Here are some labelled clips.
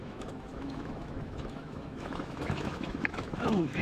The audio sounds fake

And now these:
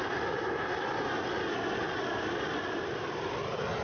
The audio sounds real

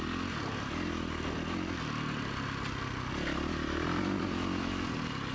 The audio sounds real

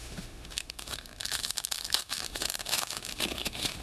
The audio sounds fake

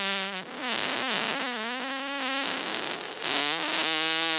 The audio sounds real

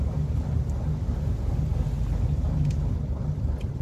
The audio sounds real